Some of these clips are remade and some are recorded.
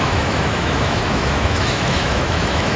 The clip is remade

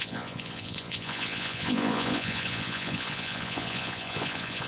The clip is remade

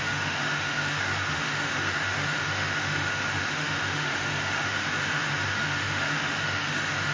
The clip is remade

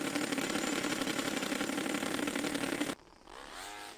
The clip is remade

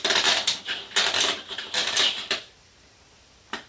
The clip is recorded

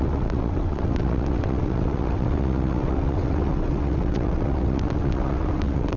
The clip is remade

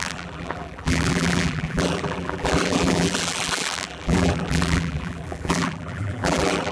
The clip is remade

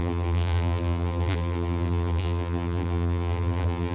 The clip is remade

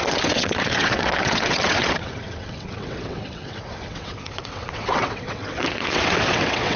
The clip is remade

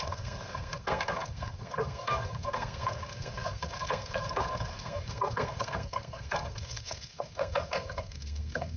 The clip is remade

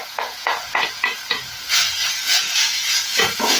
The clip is remade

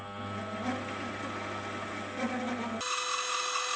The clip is recorded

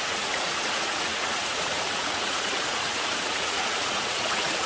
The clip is remade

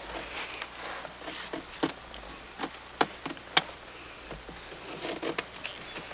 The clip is recorded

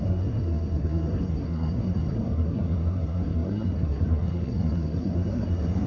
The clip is remade